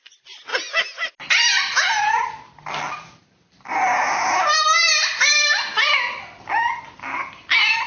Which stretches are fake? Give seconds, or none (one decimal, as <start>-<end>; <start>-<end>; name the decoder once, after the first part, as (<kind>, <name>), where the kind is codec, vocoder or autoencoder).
none